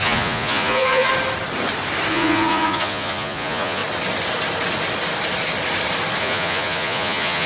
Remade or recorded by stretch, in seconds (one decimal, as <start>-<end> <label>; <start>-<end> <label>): 0.0-1.1 remade; 1.1-2.1 recorded; 2.1-3.8 remade; 3.8-6.2 recorded; 6.2-7.5 remade